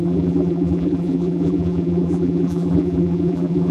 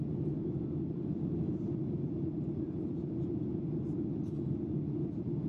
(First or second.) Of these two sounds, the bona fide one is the second